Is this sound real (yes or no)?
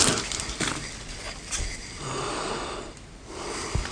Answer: yes